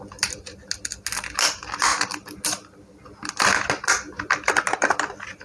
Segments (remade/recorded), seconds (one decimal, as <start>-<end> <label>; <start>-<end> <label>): 0.0-5.4 recorded

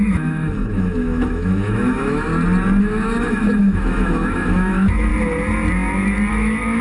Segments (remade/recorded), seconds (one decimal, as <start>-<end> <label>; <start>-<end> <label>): 0.0-2.3 remade; 2.3-2.8 recorded; 2.8-5.1 remade; 5.1-6.3 recorded; 6.3-6.8 remade

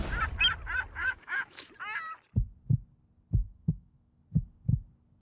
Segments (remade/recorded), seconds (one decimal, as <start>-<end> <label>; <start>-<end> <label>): 0.0-1.0 recorded; 1.0-1.7 remade; 1.7-3.4 recorded; 3.4-4.2 remade; 4.2-5.2 recorded

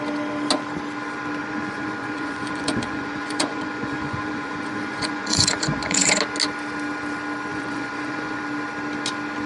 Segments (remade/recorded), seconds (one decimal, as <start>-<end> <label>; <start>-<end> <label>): 0.0-1.4 recorded; 1.4-6.1 remade; 6.1-7.5 recorded; 7.5-8.4 remade; 8.4-9.5 recorded